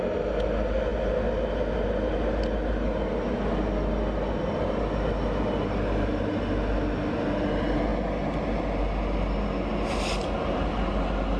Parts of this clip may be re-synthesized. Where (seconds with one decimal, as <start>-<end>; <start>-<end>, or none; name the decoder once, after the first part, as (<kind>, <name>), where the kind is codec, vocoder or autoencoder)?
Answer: none